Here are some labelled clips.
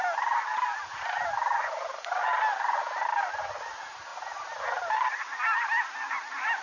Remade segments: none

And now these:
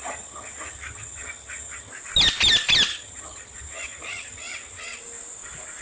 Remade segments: 0.0-1.9 (vocoder, HiFi-GAN); 2.9-5.0

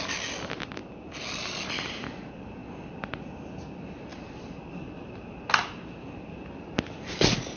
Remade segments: none

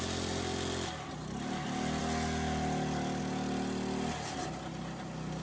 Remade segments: none

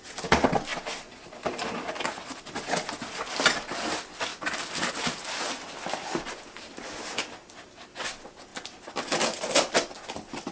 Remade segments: none